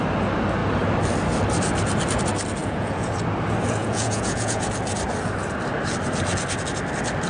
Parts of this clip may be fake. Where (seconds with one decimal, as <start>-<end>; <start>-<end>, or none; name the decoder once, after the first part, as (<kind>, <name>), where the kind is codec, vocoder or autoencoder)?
2.6-3.1 (vocoder, Vocos); 3.8-4.6